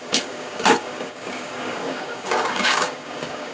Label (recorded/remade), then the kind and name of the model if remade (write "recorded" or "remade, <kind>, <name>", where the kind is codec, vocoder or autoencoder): remade, codec, DAC